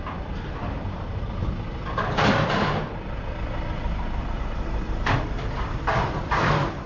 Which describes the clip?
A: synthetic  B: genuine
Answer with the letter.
A